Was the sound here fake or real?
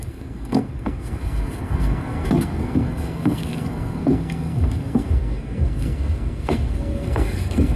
fake